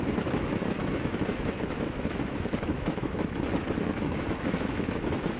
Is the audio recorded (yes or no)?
no